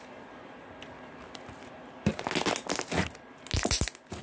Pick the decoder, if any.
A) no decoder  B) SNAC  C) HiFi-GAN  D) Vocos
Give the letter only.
A